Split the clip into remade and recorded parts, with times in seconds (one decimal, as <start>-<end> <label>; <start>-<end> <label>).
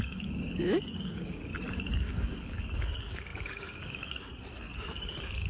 0.0-1.5 remade; 1.5-2.0 recorded; 2.0-4.3 remade; 4.3-4.9 recorded; 4.9-5.5 remade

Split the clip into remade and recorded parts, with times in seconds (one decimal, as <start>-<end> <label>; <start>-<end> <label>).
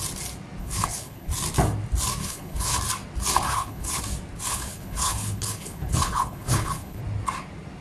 0.0-0.6 recorded; 0.6-1.3 remade; 1.3-2.2 recorded; 2.2-2.8 remade; 2.8-3.5 recorded; 3.5-4.0 remade; 4.0-4.5 recorded; 4.5-7.0 remade; 7.0-7.8 recorded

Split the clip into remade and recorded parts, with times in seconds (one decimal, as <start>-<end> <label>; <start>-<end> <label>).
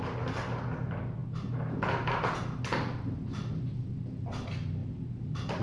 0.0-5.6 recorded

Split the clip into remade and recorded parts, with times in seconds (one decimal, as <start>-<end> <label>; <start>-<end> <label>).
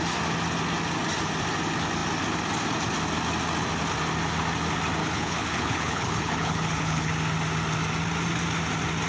0.0-5.0 recorded; 5.0-7.1 remade; 7.1-9.1 recorded